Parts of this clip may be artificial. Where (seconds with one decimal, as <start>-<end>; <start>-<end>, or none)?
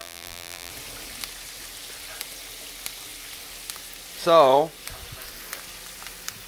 0.0-0.7